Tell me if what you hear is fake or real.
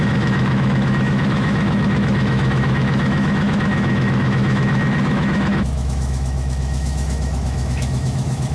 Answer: fake